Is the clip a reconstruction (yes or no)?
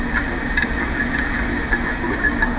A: no